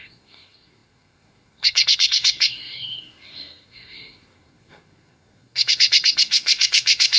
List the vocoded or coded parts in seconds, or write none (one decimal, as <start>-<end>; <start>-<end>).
0.0-7.2